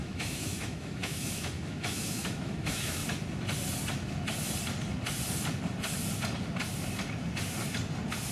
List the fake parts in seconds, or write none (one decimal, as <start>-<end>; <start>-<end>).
0.0-3.0